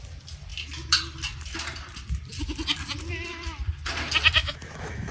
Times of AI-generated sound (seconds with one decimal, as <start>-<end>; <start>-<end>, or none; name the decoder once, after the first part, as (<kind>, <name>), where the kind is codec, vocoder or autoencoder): 4.4-5.1 (autoencoder, DAC-VAE)